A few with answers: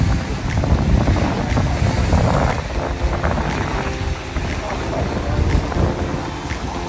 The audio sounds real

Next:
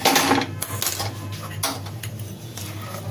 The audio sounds real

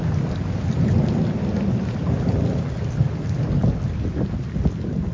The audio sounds real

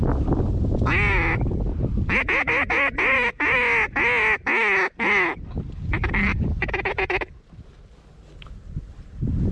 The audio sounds real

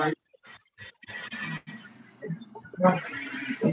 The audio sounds real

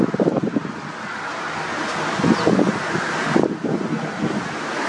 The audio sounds real